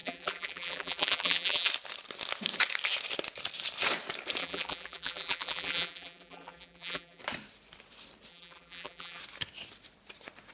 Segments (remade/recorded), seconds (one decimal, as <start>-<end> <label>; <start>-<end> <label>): 0.0-1.7 remade; 1.7-4.4 recorded; 4.4-7.2 remade; 7.2-8.3 recorded; 8.3-9.2 remade; 9.2-10.5 recorded